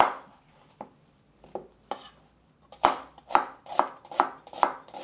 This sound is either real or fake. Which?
real